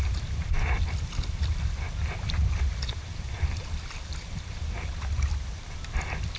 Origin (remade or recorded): recorded